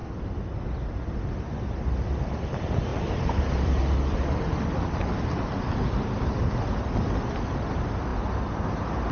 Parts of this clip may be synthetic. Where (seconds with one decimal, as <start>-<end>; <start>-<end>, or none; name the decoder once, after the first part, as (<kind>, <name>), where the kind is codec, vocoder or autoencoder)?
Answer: 0.0-0.7 (vocoder, BigVGAN v2); 2.9-3.8